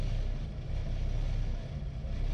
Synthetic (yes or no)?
no